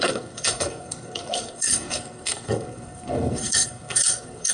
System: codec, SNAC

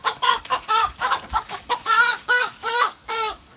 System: codec, DAC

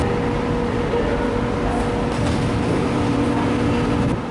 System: none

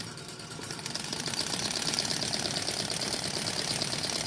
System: vocoder, BigVGAN v2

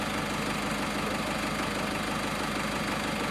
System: none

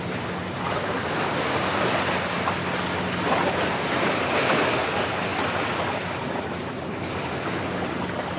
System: none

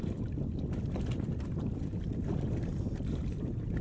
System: vocoder, BigVGAN v2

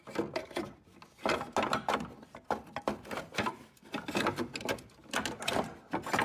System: none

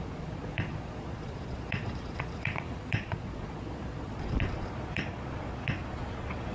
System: vocoder, Vocos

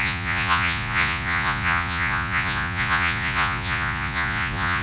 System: vocoder, Vocos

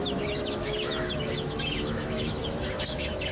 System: autoencoder, DAC-VAE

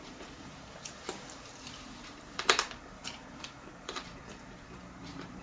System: vocoder, BigVGAN v2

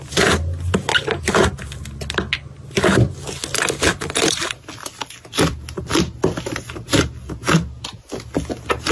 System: none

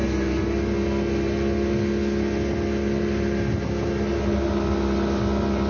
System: none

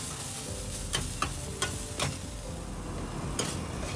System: none